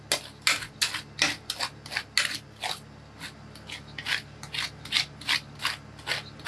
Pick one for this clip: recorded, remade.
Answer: recorded